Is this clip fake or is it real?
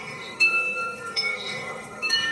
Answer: fake